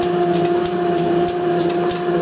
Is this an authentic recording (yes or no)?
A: yes